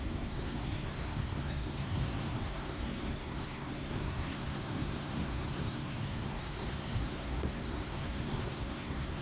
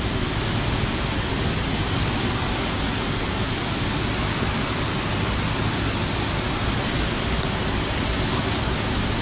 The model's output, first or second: first